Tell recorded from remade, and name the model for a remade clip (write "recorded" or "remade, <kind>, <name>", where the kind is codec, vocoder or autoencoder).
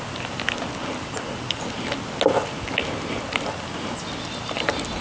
recorded